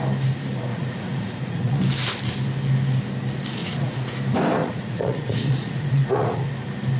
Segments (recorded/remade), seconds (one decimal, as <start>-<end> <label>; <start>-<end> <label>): 0.0-0.7 recorded; 0.7-1.8 remade; 1.8-3.6 recorded; 3.6-4.1 remade; 4.1-4.6 recorded; 4.6-6.5 remade; 6.5-7.0 recorded